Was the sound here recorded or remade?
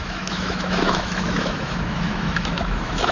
remade